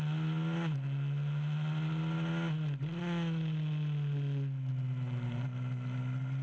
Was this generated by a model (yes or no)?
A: no